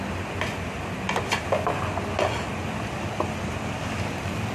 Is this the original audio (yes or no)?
yes